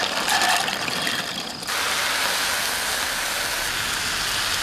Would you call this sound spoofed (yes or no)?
no